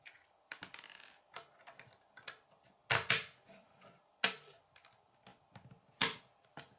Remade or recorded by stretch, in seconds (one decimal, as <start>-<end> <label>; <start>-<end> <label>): 0.0-6.8 recorded